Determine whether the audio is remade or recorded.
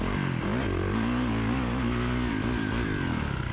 recorded